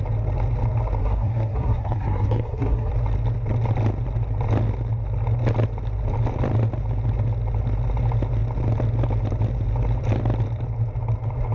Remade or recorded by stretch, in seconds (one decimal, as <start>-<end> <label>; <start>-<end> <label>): 0.0-1.0 recorded; 1.0-2.9 remade; 2.9-11.5 recorded

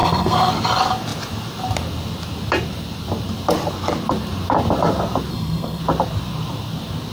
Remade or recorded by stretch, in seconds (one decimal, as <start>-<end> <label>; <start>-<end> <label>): 0.0-0.5 remade; 0.5-5.3 recorded; 5.3-5.8 remade; 5.8-7.1 recorded

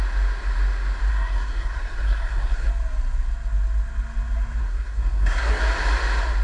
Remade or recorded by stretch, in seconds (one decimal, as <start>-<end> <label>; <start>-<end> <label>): 0.0-1.1 recorded; 1.1-2.7 remade; 2.7-4.6 recorded; 4.6-5.6 remade; 5.6-6.4 recorded

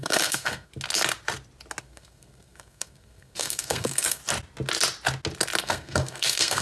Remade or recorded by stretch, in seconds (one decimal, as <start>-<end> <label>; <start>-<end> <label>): 0.0-0.7 remade; 0.7-1.8 recorded; 1.8-4.2 remade; 4.2-5.6 recorded; 5.6-6.6 remade